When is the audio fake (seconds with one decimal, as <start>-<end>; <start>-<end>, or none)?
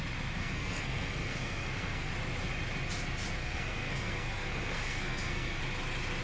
0.4-2.1; 3.4-5.6